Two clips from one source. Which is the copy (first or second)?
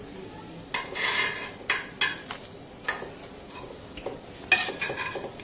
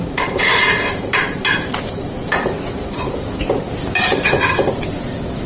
second